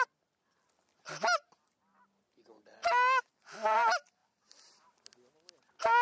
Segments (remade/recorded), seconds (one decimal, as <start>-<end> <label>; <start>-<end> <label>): 0.0-6.0 recorded